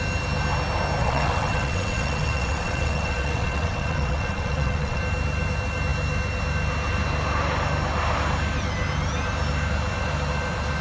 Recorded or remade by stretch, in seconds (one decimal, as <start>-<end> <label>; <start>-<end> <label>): 0.0-1.0 recorded; 1.0-5.0 remade; 5.0-10.8 recorded